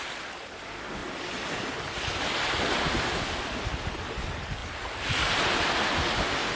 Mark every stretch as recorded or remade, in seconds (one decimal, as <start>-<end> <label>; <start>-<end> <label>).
0.0-6.6 recorded